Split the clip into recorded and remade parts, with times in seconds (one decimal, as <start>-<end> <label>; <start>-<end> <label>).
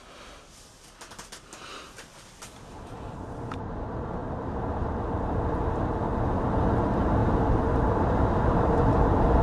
0.0-4.2 recorded; 4.2-5.4 remade; 5.4-7.2 recorded; 7.2-8.5 remade; 8.5-9.4 recorded